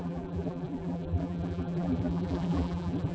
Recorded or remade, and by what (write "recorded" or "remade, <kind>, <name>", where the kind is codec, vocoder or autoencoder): remade, vocoder, BigVGAN v2